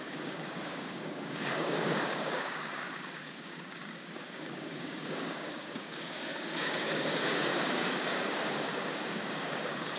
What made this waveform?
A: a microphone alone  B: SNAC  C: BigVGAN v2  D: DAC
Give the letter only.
D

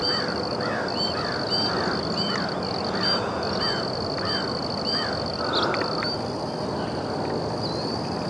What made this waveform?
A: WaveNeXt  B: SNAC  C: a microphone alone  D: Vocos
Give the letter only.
C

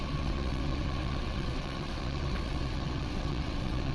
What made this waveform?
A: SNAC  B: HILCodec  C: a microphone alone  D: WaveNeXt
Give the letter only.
D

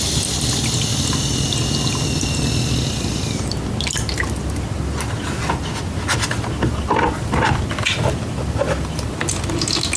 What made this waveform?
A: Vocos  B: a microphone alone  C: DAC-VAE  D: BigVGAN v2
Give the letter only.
B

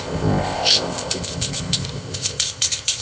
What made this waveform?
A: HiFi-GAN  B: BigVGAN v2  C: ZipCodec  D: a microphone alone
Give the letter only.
C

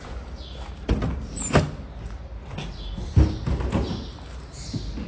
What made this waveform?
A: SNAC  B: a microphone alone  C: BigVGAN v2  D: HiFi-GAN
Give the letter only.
B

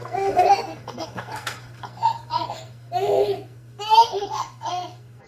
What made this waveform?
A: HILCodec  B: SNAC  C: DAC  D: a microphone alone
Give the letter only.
B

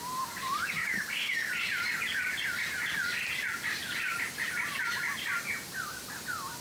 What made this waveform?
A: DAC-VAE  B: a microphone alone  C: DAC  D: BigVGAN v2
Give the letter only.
B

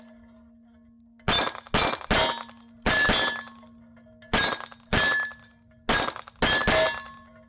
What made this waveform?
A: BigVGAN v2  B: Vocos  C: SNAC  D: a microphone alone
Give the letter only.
D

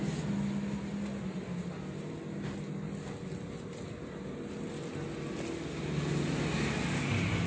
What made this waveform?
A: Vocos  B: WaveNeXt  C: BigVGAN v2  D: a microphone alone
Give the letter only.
D